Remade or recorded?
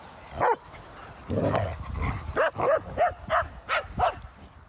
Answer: recorded